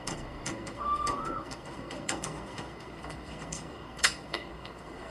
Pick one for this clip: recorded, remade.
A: remade